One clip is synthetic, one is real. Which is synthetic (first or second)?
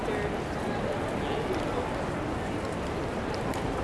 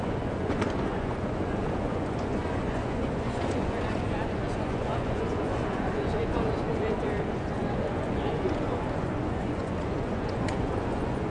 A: second